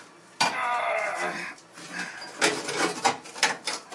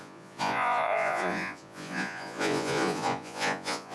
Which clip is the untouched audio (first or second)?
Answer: first